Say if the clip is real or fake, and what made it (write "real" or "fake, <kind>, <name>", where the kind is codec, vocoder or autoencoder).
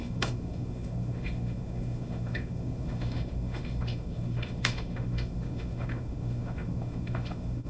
fake, autoencoder, DAC-VAE